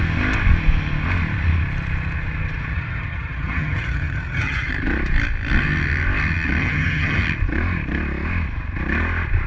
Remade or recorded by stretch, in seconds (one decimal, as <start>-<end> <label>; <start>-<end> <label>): 0.0-2.7 recorded; 2.7-4.7 remade; 4.7-6.6 recorded; 6.6-7.2 remade; 7.2-9.5 recorded